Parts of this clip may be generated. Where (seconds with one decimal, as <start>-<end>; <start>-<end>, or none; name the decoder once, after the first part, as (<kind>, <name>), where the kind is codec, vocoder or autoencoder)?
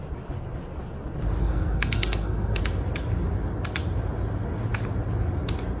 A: 1.4-2.6 (codec, SNAC)